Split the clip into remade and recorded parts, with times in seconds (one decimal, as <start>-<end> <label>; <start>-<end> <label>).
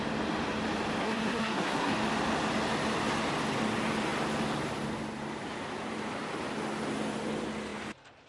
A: 0.0-1.0 recorded; 1.0-1.9 remade; 1.9-8.3 recorded